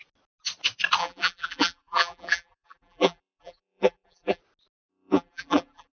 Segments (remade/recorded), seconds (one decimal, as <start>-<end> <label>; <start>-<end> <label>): 0.0-1.0 recorded; 1.0-4.4 remade; 4.4-4.9 recorded; 4.9-5.9 remade